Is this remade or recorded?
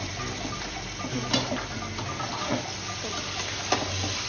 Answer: recorded